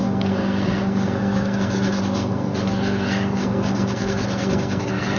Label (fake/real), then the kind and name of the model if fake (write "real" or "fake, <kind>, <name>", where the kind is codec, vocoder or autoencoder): fake, codec, SNAC